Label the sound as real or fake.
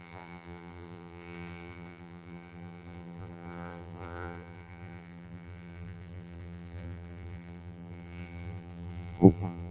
fake